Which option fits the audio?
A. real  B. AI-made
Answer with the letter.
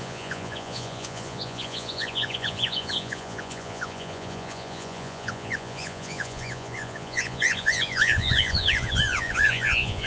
B